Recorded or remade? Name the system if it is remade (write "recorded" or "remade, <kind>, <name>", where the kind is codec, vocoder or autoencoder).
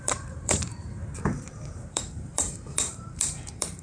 remade, vocoder, BigVGAN v2